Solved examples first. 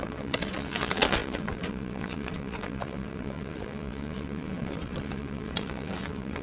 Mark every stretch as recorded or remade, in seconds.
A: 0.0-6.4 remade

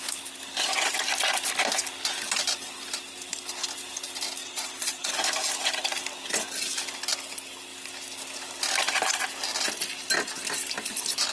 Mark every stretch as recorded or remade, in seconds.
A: 0.0-4.4 recorded; 4.4-5.1 remade; 5.1-11.3 recorded

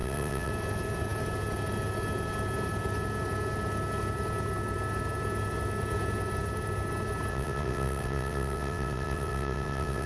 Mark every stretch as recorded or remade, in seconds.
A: 0.0-0.5 remade; 0.5-7.3 recorded; 7.3-10.1 remade

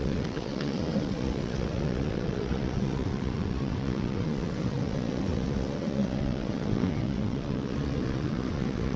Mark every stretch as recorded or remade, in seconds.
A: 0.0-9.0 remade

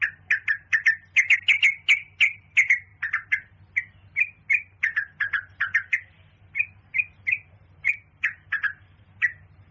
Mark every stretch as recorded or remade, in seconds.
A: 0.0-9.7 recorded

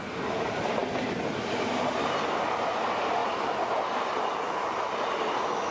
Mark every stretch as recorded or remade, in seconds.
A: 0.0-5.7 recorded

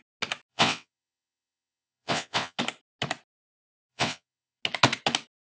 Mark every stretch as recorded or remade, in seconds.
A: 0.0-0.5 recorded; 0.5-2.6 remade; 2.6-3.9 recorded; 3.9-4.6 remade; 4.6-5.4 recorded

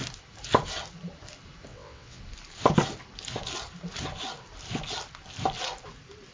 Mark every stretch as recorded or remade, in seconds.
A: 0.0-1.7 recorded; 1.7-2.2 remade; 2.2-6.3 recorded